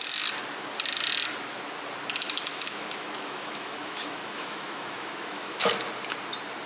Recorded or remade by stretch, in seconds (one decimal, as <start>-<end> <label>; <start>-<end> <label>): 0.0-2.5 recorded; 2.5-5.7 remade; 5.7-6.7 recorded